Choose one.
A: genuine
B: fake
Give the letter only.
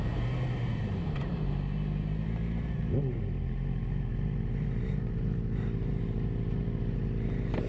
A